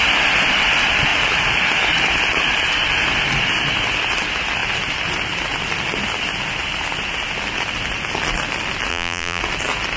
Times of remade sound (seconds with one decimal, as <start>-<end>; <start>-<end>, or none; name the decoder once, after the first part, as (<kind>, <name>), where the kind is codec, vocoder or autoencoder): 8.9-9.4 (vocoder, BigVGAN v2)